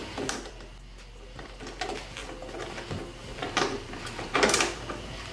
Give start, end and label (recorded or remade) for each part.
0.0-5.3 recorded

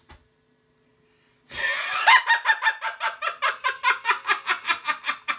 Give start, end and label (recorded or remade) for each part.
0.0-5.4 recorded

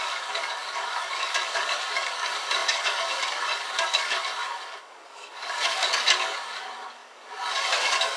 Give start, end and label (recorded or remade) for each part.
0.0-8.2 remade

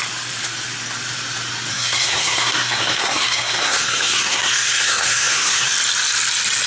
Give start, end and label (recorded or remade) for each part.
0.0-1.7 recorded; 1.7-5.7 remade; 5.7-6.7 recorded

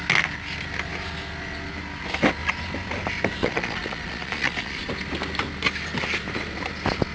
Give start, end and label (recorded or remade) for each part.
0.0-3.4 recorded; 3.4-4.9 remade; 4.9-7.1 recorded

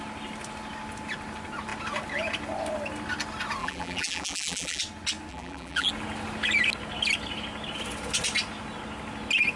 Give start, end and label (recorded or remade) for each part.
0.0-3.6 recorded; 3.6-4.8 remade; 4.8-5.3 recorded; 5.3-5.9 remade; 5.9-9.6 recorded

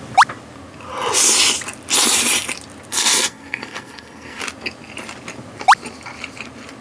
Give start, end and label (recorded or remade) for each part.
0.0-2.9 recorded; 2.9-4.4 remade; 4.4-6.8 recorded

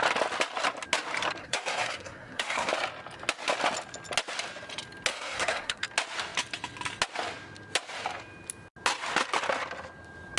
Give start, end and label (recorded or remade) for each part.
0.0-1.4 recorded; 1.4-2.7 remade; 2.7-5.1 recorded; 5.1-5.8 remade; 5.8-10.4 recorded